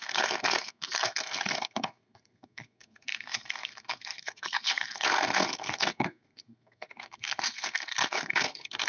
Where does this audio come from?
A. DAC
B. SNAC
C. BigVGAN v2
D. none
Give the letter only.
B